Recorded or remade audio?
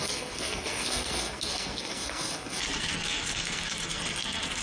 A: remade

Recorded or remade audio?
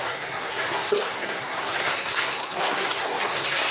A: remade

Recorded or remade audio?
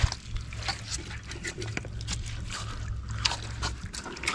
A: recorded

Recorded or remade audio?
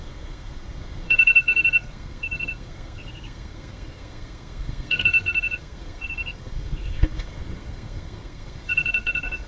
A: remade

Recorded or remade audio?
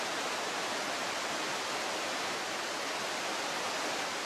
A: recorded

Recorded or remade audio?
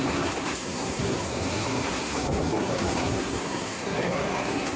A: remade